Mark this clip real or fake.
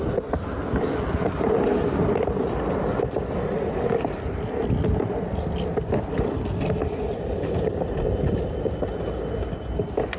real